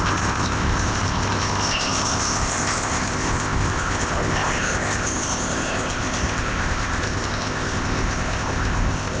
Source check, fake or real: fake